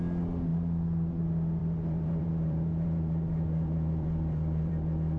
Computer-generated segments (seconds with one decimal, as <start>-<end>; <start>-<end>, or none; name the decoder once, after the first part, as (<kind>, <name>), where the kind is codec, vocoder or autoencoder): 1.6-4.7 (vocoder, BigVGAN v2)